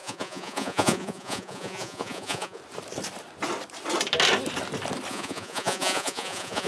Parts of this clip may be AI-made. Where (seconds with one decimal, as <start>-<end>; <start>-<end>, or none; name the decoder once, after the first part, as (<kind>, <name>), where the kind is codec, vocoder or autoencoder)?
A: 0.0-2.6 (vocoder, Vocos); 5.1-6.7